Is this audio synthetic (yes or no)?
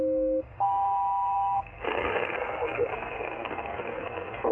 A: yes